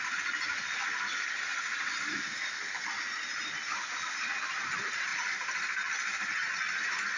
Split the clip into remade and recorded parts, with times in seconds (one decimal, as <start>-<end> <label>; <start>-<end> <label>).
0.0-7.2 recorded